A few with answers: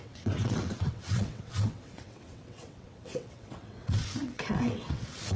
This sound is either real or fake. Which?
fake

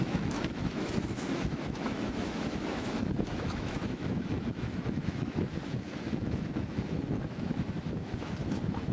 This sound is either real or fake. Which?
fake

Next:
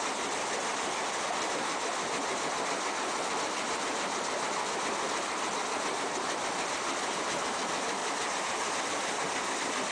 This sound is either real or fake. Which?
real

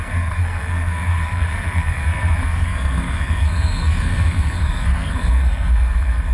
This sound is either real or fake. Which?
fake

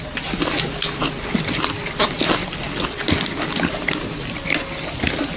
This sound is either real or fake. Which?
real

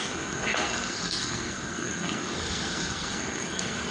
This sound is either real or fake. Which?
fake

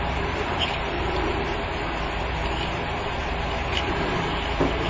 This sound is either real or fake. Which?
fake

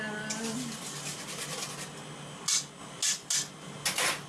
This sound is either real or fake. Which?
real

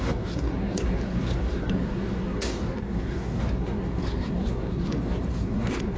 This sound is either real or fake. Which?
fake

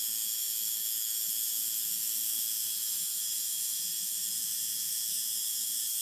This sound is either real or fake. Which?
fake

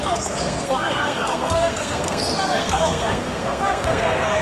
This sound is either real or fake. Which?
fake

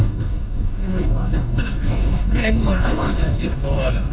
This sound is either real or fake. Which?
fake